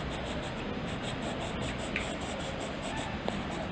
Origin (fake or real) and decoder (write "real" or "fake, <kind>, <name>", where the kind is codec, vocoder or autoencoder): real